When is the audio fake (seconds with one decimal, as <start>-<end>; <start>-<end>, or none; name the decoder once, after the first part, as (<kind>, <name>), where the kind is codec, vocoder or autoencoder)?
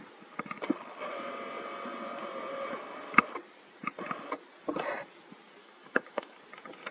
5.6-6.4 (autoencoder, DAC-VAE)